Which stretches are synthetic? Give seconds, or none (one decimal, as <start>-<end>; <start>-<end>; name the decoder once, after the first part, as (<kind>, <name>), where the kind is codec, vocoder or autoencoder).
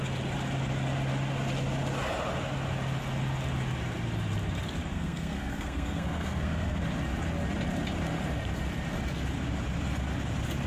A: 4.9-6.8 (codec, SNAC)